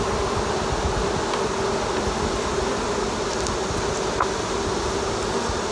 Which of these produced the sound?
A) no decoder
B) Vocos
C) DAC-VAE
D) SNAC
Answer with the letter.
A